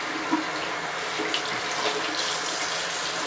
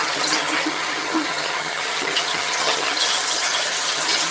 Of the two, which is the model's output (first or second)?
second